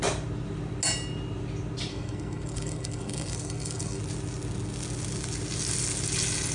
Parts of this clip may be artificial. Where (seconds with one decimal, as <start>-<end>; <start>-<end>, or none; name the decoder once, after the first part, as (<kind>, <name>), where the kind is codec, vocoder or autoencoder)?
1.9-4.0 (codec, SNAC)